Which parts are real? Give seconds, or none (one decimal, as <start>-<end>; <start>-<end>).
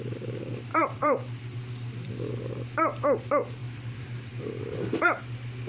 0.0-0.7; 2.1-3.6; 5.2-5.7